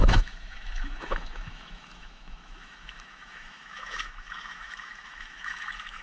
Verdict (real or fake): fake